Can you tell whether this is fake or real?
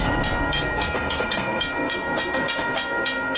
fake